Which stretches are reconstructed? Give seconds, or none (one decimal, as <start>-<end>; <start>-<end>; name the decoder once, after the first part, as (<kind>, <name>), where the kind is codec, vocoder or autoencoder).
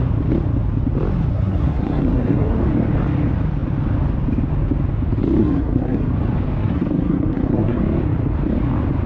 1.3-2.6 (codec, SNAC); 5.4-6.1; 6.6-7.8